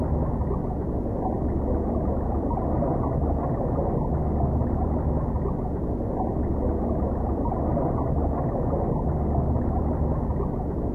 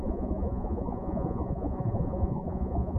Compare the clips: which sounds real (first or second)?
first